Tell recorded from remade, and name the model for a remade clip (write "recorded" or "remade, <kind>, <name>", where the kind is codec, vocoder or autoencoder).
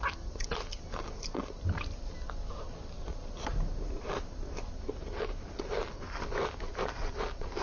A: recorded